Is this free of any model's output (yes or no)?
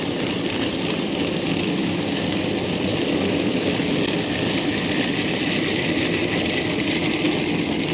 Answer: yes